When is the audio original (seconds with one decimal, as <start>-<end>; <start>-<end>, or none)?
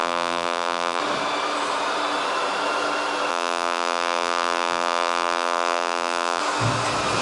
1.0-3.3; 6.4-7.2